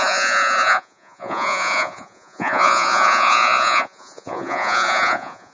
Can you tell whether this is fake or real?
fake